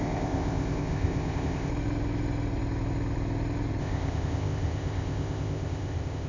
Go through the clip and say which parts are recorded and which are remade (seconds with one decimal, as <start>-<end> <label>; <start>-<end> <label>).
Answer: 0.0-1.7 remade; 1.7-3.8 recorded; 3.8-6.3 remade